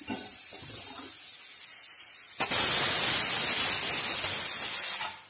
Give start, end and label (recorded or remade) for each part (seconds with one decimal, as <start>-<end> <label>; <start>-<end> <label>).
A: 0.0-5.3 recorded